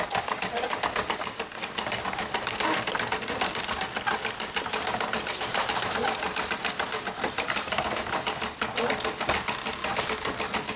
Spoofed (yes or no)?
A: no